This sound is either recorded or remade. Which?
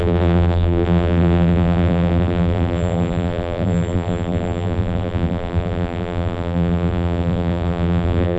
remade